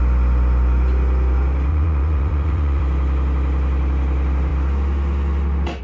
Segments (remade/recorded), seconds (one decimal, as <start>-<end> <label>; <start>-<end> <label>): 0.0-1.7 recorded; 1.7-2.8 remade; 2.8-5.8 recorded